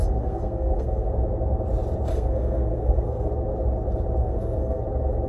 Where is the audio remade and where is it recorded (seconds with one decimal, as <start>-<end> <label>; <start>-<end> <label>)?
0.0-1.1 remade; 1.1-2.1 recorded; 2.1-3.3 remade; 3.3-4.2 recorded; 4.2-4.8 remade; 4.8-5.3 recorded